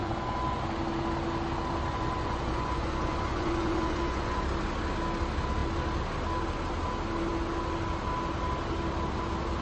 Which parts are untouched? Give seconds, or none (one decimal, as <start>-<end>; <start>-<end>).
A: 0.6-1.9; 4.4-9.6